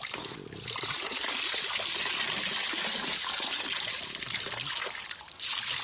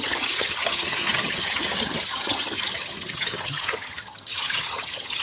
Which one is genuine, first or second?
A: first